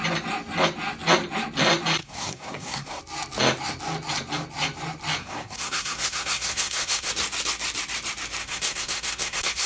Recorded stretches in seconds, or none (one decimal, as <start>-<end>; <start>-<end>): 0.0-2.0; 3.0-5.2; 7.1-8.4